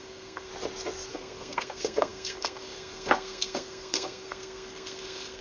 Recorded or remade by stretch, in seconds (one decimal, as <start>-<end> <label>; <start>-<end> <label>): 0.0-0.5 remade; 0.5-1.1 recorded; 1.1-5.4 remade